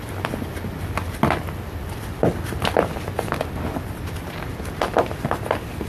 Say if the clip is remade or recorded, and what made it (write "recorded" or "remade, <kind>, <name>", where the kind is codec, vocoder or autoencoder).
recorded